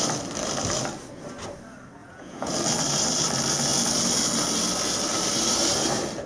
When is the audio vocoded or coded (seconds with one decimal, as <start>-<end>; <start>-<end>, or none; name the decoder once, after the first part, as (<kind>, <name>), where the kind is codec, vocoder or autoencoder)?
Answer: 2.0-2.5 (vocoder, Vocos)